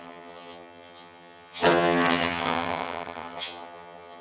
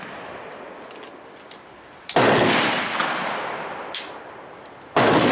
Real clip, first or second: second